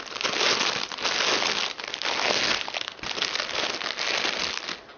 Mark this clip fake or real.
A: real